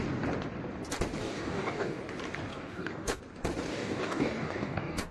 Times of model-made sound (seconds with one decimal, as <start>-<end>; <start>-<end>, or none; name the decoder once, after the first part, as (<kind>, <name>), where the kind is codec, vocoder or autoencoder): 1.2-2.0 (codec, DAC); 2.5-3.2; 3.7-5.1

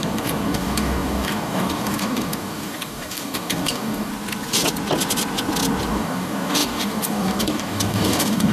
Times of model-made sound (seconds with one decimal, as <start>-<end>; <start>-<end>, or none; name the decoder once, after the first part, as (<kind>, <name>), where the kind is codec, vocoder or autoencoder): 0.0-4.1 (codec, DAC); 5.9-8.5

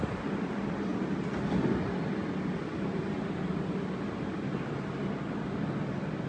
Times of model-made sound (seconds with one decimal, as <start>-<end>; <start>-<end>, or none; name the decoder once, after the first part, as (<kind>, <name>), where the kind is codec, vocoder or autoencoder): none

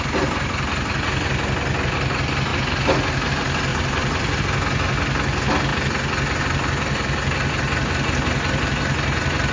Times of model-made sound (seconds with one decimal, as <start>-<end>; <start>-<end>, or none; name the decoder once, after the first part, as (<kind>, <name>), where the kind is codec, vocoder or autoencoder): 3.7-4.4 (vocoder, BigVGAN v2)

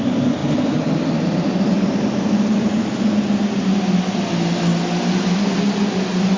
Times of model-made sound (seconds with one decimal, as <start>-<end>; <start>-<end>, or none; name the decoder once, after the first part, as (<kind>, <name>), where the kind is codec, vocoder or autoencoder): none

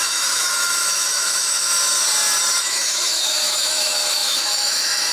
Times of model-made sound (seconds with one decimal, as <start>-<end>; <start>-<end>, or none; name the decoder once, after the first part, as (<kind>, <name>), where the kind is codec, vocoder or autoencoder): 0.0-1.7 (autoencoder, DAC-VAE); 2.6-5.1

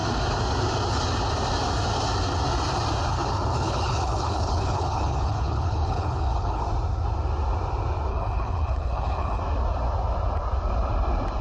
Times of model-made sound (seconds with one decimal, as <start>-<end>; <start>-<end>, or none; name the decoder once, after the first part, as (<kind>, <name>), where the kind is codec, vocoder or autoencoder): 3.1-6.6 (codec, HILCodec); 8.1-9.4

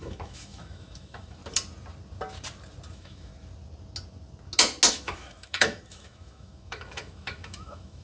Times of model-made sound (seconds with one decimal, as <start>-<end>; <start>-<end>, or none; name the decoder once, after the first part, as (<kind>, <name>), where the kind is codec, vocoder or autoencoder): 0.0-1.4 (autoencoder, DAC-VAE); 2.9-3.3; 4.9-8.0